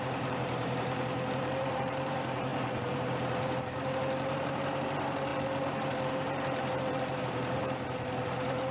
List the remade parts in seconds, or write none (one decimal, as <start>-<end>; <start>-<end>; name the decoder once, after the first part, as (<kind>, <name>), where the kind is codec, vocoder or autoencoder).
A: 0.0-8.7 (vocoder, BigVGAN v2)